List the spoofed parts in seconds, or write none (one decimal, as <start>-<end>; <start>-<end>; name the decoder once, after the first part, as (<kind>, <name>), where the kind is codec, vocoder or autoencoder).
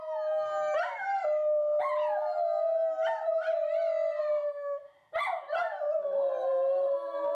none